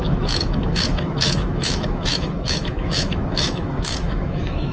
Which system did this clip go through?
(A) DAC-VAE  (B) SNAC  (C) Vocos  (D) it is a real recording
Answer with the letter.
A